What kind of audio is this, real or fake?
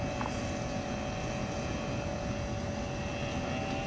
real